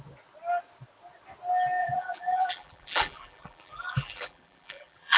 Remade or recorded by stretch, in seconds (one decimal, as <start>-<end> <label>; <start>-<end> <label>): 0.0-1.8 recorded; 1.8-5.2 remade